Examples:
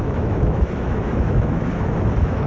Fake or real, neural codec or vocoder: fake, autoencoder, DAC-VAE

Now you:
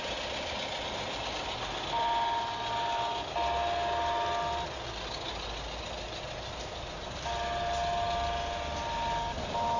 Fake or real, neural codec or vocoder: real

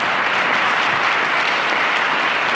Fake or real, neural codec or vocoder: real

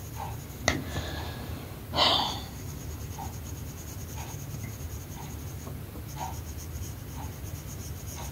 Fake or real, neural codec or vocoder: real